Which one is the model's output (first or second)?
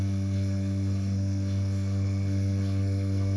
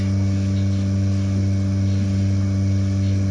first